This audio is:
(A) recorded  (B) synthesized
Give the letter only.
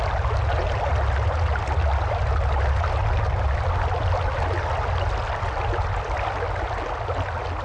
A